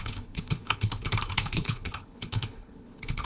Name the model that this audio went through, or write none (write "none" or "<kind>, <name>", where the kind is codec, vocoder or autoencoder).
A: codec, HILCodec